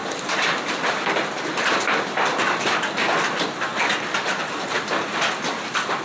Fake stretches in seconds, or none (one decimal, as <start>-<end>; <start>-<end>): none